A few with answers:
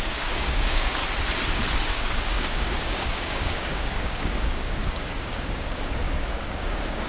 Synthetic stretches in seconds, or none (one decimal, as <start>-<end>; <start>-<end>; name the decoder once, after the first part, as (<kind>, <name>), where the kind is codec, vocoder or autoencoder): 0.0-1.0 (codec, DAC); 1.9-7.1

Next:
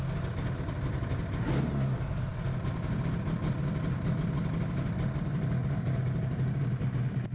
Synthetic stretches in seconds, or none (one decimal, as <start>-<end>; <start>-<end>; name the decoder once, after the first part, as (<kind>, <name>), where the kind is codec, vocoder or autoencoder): none

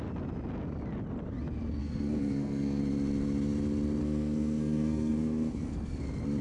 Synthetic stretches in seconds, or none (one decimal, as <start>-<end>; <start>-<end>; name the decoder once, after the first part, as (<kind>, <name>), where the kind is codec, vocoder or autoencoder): 1.8-2.8 (codec, SNAC); 4.0-6.0